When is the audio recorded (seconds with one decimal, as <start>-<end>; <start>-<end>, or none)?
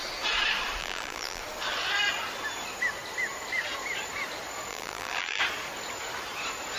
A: 0.0-0.8; 1.4-4.7; 5.4-6.8